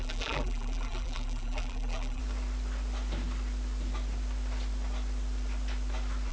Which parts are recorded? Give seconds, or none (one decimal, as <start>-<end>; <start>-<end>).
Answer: 2.2-6.3